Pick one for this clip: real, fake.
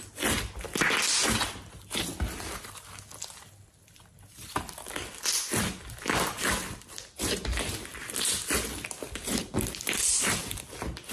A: real